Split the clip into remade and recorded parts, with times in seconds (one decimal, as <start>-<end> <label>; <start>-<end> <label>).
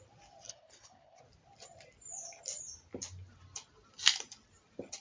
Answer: 0.0-0.5 recorded; 0.5-1.2 remade; 1.2-5.0 recorded